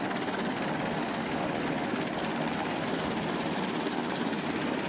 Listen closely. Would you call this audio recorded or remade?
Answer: recorded